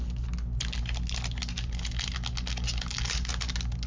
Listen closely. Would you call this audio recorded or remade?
recorded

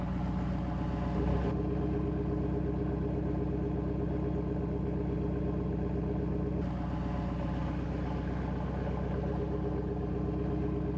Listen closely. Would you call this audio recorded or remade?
recorded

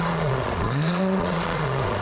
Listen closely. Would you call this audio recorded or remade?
remade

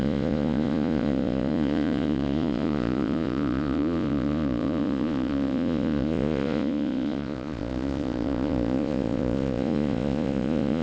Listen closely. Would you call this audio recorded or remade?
remade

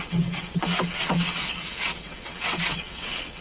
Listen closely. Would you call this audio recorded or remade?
remade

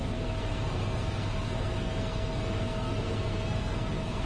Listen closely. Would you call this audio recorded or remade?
remade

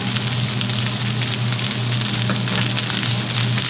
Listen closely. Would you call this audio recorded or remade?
recorded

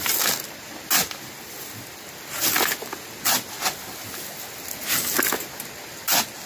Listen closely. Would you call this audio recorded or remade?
recorded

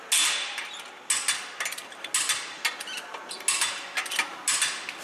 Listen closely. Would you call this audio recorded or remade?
recorded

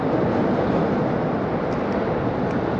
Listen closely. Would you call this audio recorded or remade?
recorded